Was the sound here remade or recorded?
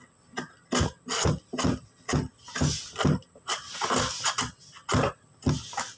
recorded